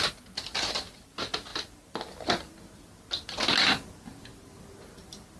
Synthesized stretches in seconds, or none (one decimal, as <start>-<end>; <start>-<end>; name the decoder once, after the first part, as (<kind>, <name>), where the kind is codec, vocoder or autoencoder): none